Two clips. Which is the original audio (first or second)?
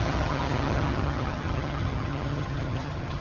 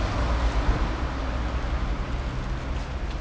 second